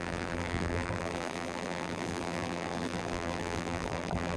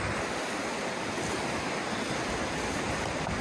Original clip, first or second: second